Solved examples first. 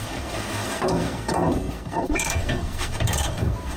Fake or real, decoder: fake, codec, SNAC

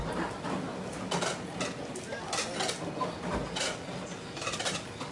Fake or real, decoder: real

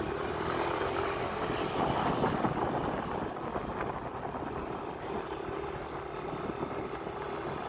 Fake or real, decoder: real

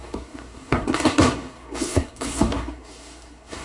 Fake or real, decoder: fake, codec, SNAC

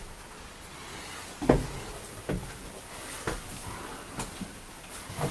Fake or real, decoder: real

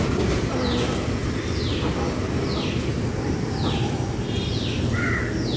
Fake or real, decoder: real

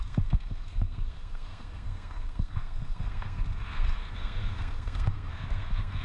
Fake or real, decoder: fake, codec, SNAC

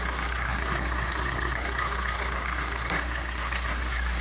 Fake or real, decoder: fake, codec, SNAC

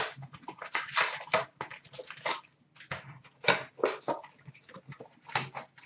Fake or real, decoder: real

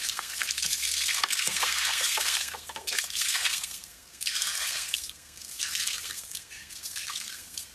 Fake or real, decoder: fake, codec, SNAC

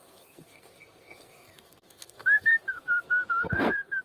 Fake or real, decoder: fake, codec, SNAC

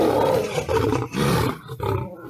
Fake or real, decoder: real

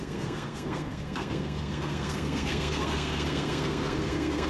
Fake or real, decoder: fake, codec, SNAC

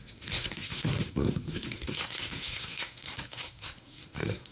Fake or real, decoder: fake, codec, SNAC